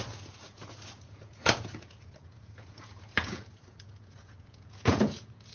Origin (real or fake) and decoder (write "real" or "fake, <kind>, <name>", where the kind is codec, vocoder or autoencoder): fake, vocoder, Vocos